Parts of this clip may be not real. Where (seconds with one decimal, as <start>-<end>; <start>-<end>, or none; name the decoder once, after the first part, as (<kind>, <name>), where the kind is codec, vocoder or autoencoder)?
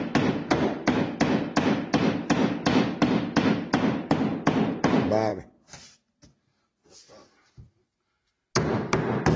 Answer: none